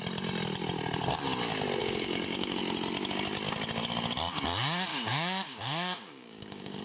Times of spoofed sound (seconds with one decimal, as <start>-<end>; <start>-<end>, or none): 1.8-2.6; 4.9-6.8

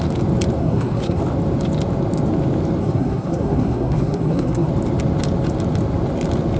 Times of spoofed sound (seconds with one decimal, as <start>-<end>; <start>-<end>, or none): 0.6-1.2; 2.8-4.7

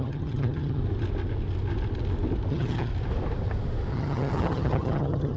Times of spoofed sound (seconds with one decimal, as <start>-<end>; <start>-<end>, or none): 0.0-0.8; 2.5-2.9; 3.9-5.4